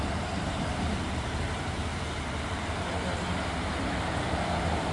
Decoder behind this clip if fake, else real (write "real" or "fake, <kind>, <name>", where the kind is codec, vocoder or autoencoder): fake, vocoder, BigVGAN v2